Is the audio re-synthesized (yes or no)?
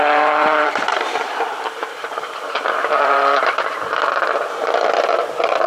yes